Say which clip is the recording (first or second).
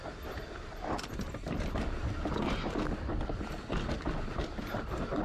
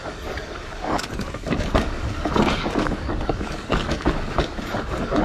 first